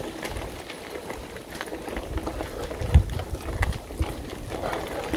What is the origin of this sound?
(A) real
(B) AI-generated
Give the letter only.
A